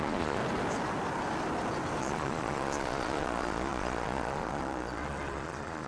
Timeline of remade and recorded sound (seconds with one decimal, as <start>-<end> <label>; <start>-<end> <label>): 0.0-0.4 remade; 0.4-2.0 recorded; 2.0-5.9 remade